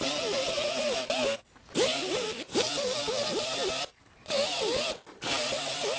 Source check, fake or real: real